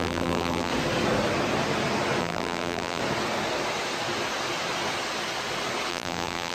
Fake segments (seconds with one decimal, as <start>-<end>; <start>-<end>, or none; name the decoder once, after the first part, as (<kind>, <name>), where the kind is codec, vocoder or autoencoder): 0.0-0.7 (vocoder, BigVGAN v2); 2.2-3.0; 5.9-6.5